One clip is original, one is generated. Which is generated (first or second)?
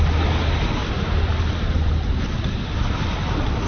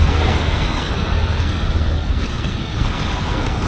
second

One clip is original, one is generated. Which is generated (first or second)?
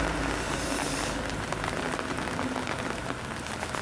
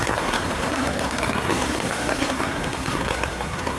second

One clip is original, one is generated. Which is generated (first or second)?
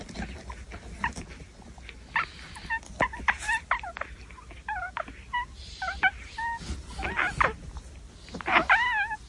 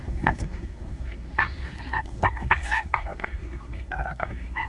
second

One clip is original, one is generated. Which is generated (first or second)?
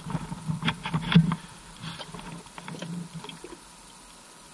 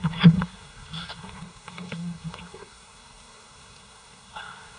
second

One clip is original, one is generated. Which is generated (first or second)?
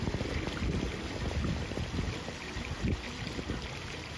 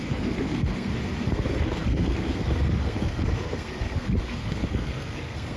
second